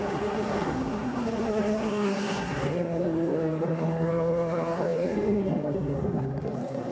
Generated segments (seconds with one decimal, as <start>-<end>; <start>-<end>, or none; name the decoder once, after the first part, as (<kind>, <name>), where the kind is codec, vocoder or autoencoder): 0.0-6.9 (codec, SNAC)